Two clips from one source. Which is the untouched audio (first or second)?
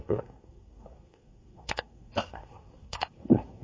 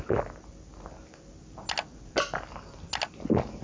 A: second